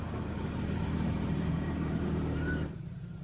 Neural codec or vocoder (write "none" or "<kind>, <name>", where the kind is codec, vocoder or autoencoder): vocoder, BigVGAN v2